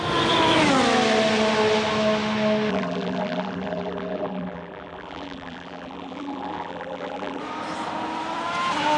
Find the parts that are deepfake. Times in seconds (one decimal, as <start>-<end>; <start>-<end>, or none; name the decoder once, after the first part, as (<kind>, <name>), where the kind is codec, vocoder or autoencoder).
2.7-7.4 (vocoder, BigVGAN v2)